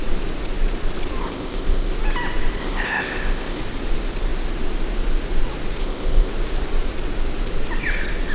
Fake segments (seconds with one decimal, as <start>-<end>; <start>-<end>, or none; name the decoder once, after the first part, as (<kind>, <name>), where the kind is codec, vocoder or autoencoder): 1.2-1.9 (codec, ZipCodec); 2.6-3.6; 5.8-6.3

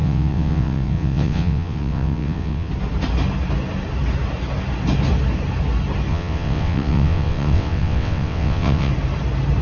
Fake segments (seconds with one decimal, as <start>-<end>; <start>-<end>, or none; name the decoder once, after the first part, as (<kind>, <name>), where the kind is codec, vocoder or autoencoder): 0.0-2.7 (vocoder, WaveNeXt); 6.1-8.9